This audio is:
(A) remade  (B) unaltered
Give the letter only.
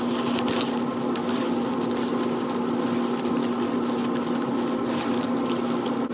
B